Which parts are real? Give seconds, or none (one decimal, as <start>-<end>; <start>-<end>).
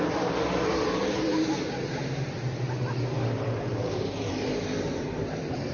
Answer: none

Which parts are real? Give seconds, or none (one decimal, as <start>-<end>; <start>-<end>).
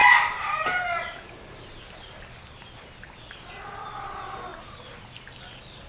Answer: 0.0-5.9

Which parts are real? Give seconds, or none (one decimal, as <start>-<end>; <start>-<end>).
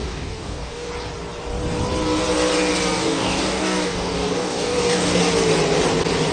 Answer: 0.9-3.0; 5.2-6.3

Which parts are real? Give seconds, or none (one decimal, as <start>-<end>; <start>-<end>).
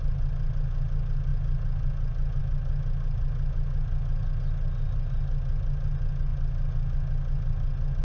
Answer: 0.0-8.0